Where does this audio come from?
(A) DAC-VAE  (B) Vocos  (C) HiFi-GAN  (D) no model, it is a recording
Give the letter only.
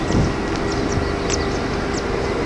D